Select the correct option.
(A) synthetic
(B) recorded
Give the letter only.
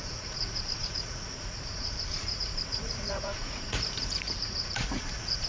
A